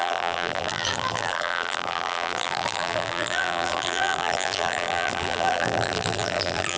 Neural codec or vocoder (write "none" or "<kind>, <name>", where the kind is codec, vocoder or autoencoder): vocoder, BigVGAN v2